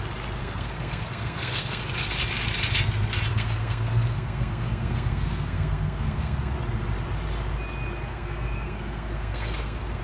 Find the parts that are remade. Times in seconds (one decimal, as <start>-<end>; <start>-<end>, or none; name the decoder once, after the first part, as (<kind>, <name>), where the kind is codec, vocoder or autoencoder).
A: 0.4-1.8 (codec, SNAC); 3.3-6.5; 8.1-10.0